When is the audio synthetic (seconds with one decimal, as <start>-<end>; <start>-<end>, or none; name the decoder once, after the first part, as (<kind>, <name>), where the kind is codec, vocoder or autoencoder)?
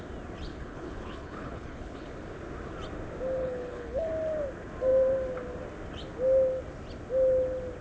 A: 0.5-2.1 (codec, HILCodec); 3.4-4.1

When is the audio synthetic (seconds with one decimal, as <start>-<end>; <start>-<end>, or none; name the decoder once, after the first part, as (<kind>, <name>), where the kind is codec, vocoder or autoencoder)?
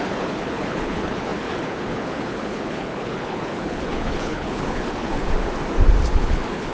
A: 0.0-5.3 (codec, HILCodec); 6.1-6.7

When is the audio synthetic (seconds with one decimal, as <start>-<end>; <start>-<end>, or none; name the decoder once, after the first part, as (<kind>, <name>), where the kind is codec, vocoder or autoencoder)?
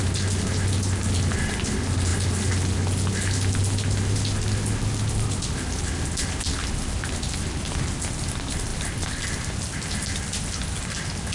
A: none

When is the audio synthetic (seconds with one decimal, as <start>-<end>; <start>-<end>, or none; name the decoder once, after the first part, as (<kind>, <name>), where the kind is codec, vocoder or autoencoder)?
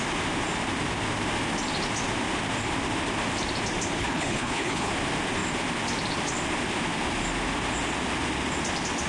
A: 4.0-4.9 (codec, HILCodec)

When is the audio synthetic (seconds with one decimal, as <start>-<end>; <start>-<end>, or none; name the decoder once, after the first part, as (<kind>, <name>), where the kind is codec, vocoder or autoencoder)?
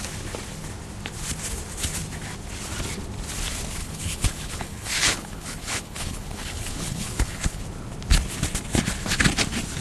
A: 3.8-7.6 (codec, HILCodec)